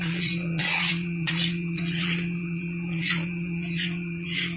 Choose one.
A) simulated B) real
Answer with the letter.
A